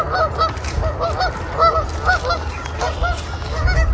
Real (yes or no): yes